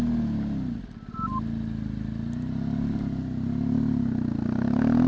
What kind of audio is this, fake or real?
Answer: real